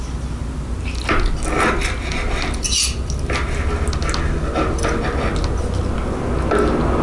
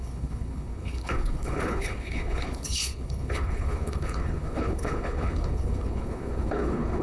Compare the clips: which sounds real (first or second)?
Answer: first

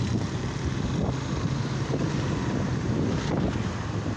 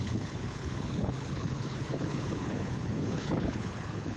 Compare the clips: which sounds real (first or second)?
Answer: first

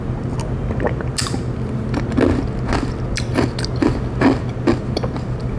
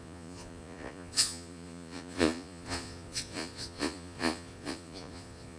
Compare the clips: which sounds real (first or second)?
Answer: first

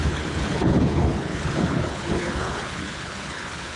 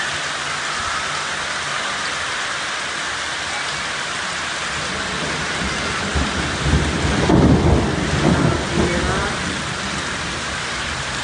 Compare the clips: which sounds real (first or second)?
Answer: second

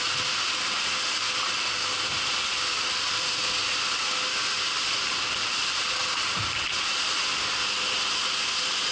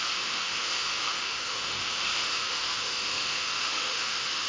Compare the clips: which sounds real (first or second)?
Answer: first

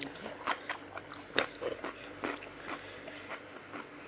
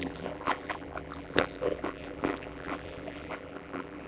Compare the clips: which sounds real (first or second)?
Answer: first